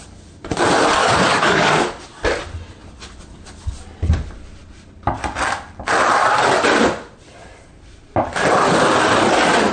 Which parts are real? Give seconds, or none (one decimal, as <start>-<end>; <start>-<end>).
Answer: 0.0-1.0; 2.0-9.7